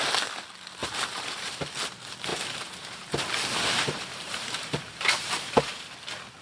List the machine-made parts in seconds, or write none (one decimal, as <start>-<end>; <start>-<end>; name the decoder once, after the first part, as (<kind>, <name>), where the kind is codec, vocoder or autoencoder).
0.8-1.7 (vocoder, BigVGAN v2); 2.3-5.7